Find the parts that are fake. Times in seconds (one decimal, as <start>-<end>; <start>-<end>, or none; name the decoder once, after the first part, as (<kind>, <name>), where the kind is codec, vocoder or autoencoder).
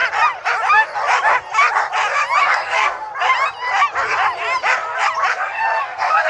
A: 2.4-3.1 (codec, SNAC); 5.3-6.3